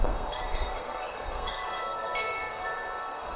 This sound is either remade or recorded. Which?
remade